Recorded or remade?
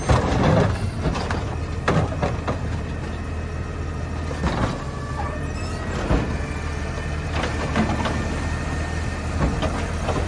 recorded